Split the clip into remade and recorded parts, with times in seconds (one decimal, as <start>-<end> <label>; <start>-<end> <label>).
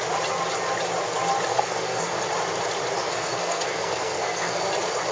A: 0.0-1.5 recorded; 1.5-2.2 remade; 2.2-3.0 recorded; 3.0-4.6 remade; 4.6-5.1 recorded